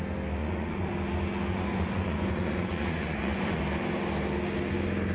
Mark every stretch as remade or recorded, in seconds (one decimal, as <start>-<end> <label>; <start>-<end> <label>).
0.0-0.4 recorded; 0.4-0.9 remade; 0.9-1.5 recorded; 1.5-3.6 remade; 3.6-5.1 recorded